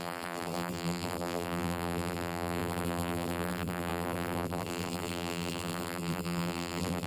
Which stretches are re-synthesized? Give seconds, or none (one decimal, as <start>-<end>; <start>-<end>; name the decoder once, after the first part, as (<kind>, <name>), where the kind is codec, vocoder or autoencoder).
0.0-7.1 (vocoder, BigVGAN v2)